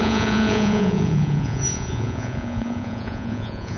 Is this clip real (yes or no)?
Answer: no